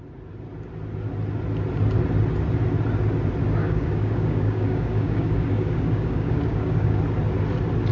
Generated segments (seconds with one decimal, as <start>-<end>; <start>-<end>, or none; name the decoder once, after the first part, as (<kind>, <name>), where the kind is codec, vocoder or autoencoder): 3.6-7.0 (codec, DAC)